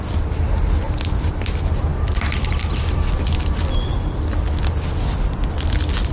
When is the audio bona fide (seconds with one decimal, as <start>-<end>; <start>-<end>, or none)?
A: 0.0-6.1